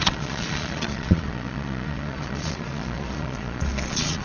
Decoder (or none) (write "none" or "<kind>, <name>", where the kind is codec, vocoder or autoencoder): vocoder, Vocos